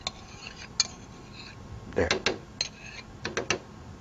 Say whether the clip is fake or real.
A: real